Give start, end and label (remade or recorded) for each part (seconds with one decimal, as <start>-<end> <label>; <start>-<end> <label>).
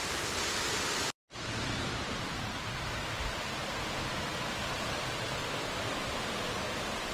0.0-2.6 remade; 2.6-7.1 recorded